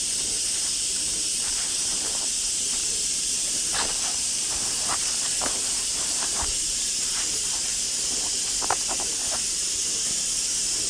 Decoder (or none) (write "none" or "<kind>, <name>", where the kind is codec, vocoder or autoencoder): vocoder, BigVGAN v2